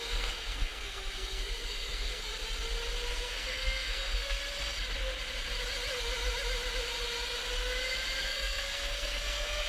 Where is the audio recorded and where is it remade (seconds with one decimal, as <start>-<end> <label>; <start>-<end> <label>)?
0.0-2.3 remade; 2.3-3.1 recorded; 3.1-4.4 remade; 4.4-8.2 recorded; 8.2-9.7 remade